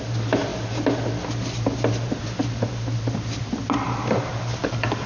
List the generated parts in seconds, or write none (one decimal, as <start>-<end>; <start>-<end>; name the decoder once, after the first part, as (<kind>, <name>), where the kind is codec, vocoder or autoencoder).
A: 4.6-5.1 (codec, DAC)